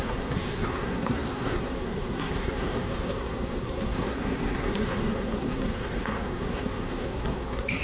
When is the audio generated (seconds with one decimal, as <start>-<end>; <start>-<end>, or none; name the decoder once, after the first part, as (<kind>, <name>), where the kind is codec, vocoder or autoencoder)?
0.0-7.8 (codec, SNAC)